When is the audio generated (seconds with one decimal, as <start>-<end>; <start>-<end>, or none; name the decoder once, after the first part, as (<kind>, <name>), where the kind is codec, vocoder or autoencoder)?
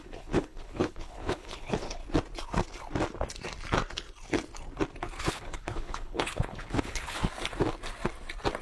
0.0-2.0 (codec, HILCodec); 5.2-7.2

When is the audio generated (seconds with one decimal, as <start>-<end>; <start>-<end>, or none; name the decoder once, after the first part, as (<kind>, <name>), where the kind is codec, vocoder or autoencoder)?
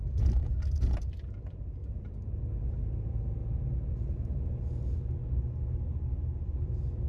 0.0-1.8 (vocoder, BigVGAN v2); 2.8-3.4; 6.4-7.1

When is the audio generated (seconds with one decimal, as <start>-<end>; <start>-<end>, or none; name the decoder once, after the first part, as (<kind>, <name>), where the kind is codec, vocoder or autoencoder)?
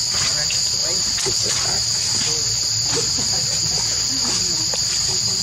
0.8-1.5 (vocoder, BigVGAN v2)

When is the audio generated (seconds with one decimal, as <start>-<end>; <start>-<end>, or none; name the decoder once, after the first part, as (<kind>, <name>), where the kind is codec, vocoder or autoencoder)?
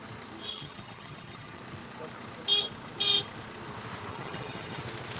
0.5-1.6 (vocoder, HiFi-GAN); 4.1-4.8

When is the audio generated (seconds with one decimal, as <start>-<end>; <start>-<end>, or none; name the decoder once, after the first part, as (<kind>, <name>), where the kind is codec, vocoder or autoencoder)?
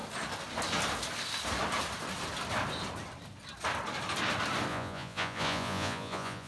4.7-6.5 (vocoder, Vocos)